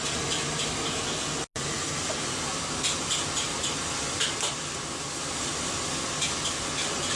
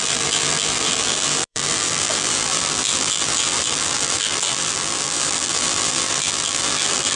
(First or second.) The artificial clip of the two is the second